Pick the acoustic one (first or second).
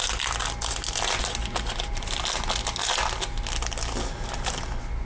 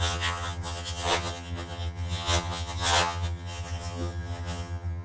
first